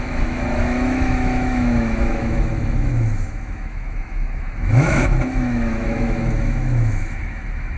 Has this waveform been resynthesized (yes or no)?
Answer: yes